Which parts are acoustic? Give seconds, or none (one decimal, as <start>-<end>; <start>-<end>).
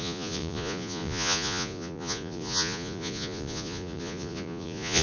none